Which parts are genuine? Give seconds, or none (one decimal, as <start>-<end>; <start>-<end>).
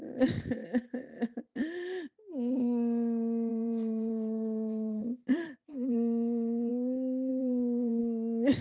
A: 0.0-3.5; 6.7-7.3; 8.0-8.6